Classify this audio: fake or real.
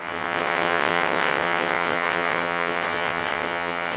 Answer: fake